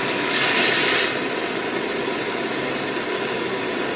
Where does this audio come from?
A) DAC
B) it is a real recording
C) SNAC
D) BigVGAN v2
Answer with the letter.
B